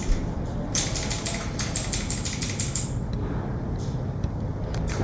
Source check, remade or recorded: recorded